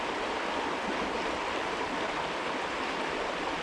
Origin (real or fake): real